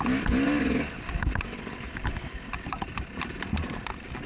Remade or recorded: recorded